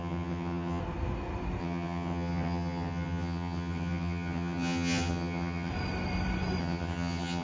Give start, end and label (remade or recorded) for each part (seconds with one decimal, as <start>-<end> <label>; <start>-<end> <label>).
0.0-0.8 remade; 0.8-1.6 recorded; 1.6-5.7 remade; 5.7-6.6 recorded; 6.6-7.4 remade